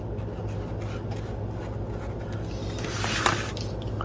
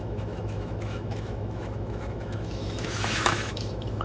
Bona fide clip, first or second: first